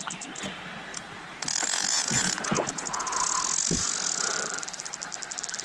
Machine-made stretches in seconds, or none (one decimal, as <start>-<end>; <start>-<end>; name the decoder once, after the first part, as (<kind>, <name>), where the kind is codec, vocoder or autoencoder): 0.9-4.3 (vocoder, Vocos)